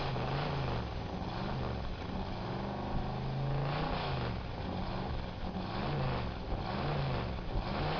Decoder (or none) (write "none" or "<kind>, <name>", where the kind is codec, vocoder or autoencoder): none